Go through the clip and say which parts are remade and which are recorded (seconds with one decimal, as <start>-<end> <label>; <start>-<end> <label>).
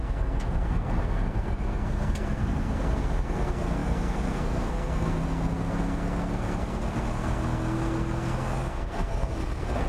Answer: 0.0-9.9 remade